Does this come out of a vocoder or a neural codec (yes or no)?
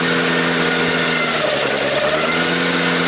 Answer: no